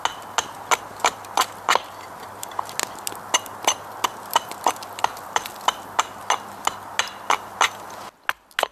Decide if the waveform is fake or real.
real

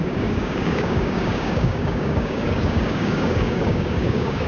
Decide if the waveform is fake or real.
fake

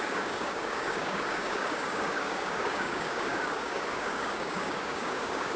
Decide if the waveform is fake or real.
fake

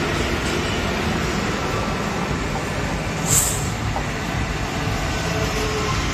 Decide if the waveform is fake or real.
real